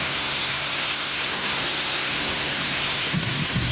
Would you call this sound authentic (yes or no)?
no